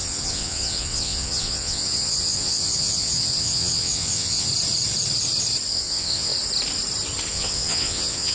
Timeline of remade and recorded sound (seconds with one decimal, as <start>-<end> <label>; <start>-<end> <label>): 0.0-4.5 remade; 4.5-5.7 recorded; 5.7-6.3 remade; 6.3-7.3 recorded; 7.3-8.3 remade